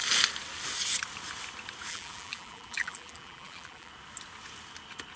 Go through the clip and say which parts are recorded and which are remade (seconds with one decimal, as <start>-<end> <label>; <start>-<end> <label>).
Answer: 0.0-1.9 recorded; 1.9-3.9 remade; 3.9-5.2 recorded